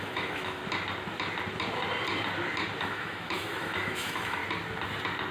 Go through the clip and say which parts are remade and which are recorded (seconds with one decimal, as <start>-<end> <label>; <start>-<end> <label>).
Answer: 0.0-0.6 remade; 0.6-2.8 recorded; 2.8-4.4 remade; 4.4-5.3 recorded